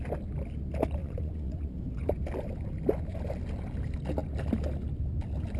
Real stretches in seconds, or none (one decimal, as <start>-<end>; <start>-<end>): 0.0-1.0; 2.2-5.6